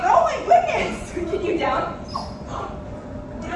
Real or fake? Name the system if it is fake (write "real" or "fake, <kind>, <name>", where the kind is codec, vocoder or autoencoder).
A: fake, vocoder, Vocos